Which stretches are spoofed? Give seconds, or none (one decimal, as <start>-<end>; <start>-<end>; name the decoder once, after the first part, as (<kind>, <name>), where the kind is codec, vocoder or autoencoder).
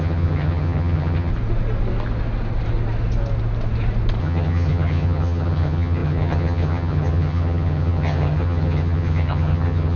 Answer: 0.0-1.3 (vocoder, HiFi-GAN); 4.2-10.0